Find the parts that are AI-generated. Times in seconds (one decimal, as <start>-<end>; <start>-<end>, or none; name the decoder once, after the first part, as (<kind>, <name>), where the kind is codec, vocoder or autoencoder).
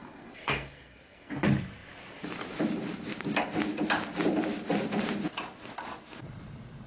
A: 0.0-1.3 (codec, SNAC)